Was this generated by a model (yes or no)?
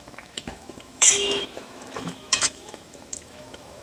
yes